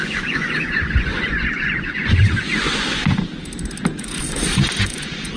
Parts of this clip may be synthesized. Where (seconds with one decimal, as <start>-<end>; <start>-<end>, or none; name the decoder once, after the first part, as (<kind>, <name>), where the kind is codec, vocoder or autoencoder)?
0.0-3.2 (vocoder, Vocos); 3.9-5.4